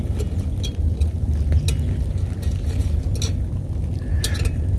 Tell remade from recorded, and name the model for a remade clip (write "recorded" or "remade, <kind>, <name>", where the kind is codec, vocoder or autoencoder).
recorded